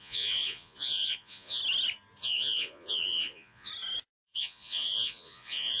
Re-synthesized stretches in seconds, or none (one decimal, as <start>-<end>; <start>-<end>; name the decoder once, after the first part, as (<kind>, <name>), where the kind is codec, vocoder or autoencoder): 0.0-1.6 (vocoder, Vocos); 2.2-3.7; 4.2-5.8